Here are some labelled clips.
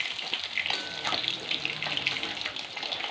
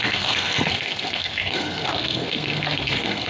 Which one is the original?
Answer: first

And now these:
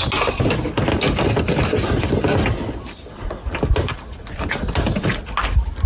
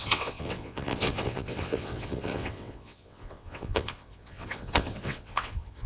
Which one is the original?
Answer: first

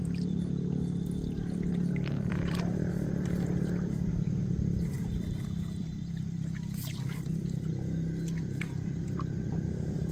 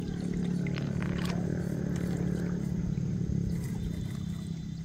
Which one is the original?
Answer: second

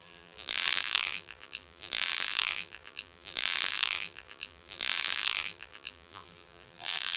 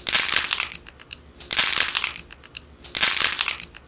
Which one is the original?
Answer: second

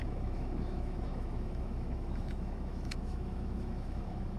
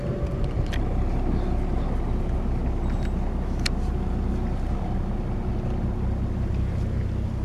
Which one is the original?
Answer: second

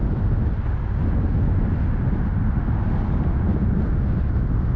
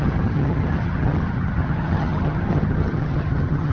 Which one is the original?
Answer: first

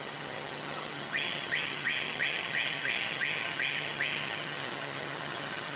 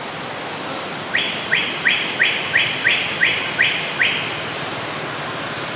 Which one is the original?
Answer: second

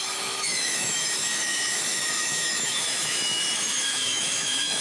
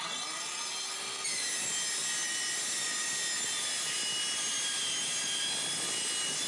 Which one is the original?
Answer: second